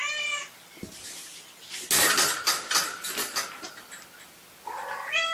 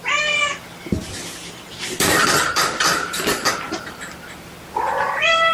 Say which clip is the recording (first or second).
first